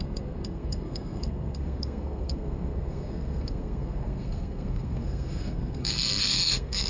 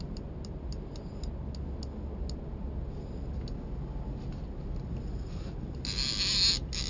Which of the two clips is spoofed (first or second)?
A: first